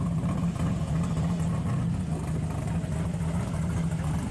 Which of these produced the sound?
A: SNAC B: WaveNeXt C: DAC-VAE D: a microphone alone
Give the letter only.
D